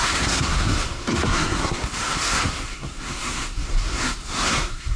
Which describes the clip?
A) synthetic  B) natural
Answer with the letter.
A